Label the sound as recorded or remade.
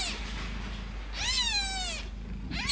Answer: recorded